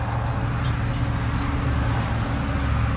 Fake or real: real